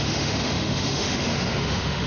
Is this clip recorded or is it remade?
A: remade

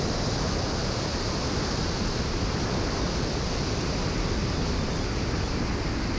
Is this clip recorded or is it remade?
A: recorded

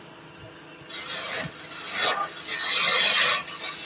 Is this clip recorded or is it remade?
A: recorded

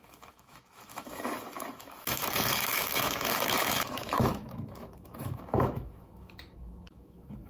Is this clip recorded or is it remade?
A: remade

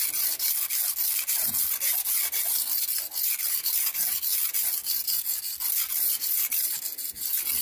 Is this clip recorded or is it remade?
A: recorded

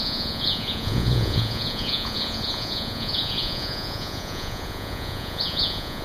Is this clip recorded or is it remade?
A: remade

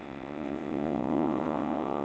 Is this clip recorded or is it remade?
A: remade